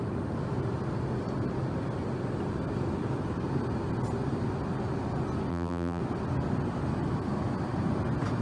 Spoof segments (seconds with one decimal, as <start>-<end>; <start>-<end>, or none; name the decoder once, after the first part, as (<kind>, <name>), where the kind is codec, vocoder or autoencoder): 5.5-6.0 (vocoder, BigVGAN v2)